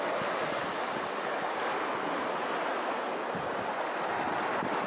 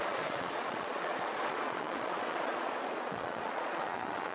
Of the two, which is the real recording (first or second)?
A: first